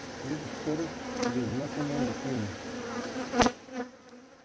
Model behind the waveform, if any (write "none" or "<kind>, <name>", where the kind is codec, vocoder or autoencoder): vocoder, BigVGAN v2